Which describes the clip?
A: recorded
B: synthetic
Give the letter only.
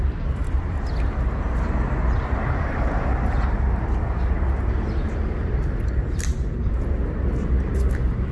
B